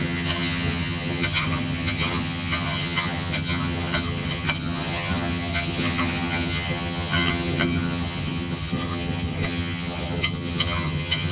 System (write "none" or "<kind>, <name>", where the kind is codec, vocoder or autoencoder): vocoder, HiFi-GAN